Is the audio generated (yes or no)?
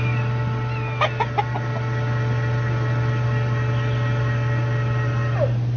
no